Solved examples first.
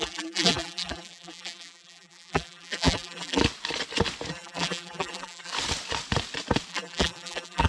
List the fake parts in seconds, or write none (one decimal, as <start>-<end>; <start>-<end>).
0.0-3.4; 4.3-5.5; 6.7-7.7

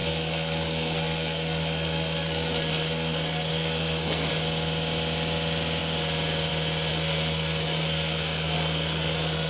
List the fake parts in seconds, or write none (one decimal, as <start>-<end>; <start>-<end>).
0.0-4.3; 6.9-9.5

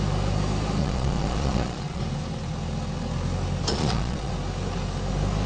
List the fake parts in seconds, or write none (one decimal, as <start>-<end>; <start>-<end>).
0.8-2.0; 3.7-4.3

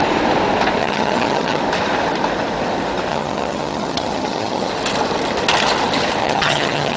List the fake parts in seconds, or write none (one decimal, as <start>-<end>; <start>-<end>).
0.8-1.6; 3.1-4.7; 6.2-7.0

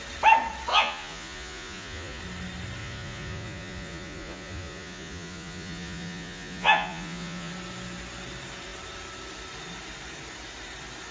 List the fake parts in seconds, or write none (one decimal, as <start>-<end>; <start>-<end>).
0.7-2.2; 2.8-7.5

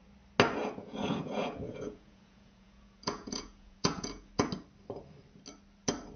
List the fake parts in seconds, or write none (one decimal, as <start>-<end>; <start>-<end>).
0.6-4.3

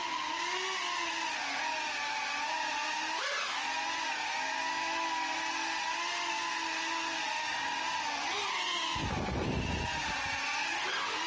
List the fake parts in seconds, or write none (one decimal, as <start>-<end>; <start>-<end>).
none